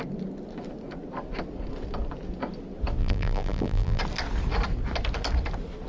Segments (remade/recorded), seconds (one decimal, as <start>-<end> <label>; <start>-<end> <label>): 0.0-3.0 recorded; 3.0-4.0 remade; 4.0-5.9 recorded